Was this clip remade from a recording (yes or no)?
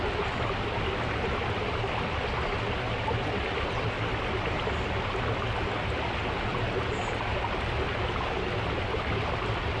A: no